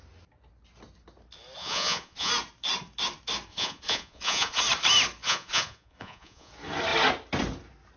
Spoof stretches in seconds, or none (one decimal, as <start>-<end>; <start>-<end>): 1.6-2.3; 3.5-4.6; 5.2-6.5